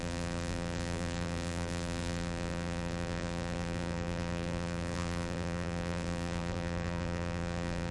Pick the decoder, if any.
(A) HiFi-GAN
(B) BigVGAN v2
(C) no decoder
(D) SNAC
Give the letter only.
B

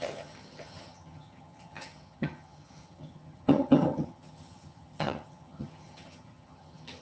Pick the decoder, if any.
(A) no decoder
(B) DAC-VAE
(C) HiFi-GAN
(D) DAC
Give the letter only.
C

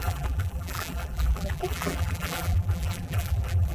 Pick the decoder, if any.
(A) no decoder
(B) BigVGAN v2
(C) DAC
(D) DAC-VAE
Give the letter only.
B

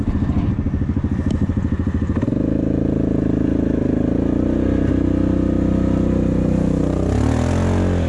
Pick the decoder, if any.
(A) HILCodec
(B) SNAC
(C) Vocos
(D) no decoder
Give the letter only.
D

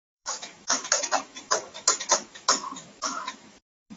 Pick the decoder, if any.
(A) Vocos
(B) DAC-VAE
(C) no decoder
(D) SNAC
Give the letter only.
B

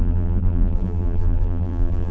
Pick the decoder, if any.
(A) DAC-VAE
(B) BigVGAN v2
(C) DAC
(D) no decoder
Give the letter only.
B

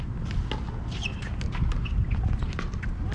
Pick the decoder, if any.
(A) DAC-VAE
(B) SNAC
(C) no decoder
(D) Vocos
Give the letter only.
C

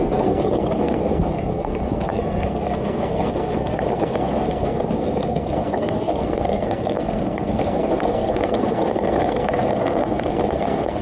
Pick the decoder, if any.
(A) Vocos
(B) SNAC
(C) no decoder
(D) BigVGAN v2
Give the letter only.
B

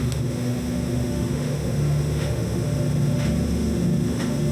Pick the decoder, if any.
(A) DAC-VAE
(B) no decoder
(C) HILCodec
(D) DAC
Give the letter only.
A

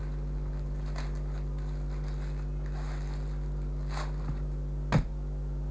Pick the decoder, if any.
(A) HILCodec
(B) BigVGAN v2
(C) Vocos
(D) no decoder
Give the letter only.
D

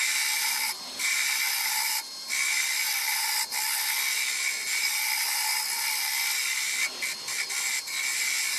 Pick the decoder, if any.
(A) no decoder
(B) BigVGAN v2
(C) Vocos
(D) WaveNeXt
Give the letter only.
A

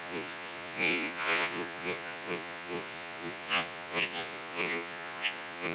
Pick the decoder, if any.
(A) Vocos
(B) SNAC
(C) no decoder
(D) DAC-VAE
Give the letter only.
A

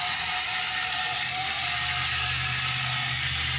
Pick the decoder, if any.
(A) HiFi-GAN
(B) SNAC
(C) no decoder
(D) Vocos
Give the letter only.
C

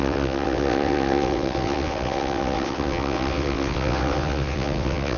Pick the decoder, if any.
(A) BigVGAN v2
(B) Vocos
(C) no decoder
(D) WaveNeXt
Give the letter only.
D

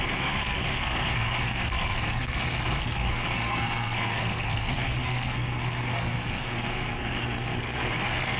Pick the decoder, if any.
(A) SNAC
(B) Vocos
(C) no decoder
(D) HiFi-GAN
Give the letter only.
A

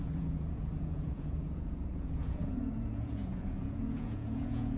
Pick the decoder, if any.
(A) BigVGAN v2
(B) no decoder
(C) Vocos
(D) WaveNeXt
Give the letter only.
C